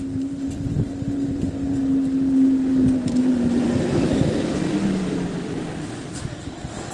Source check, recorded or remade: recorded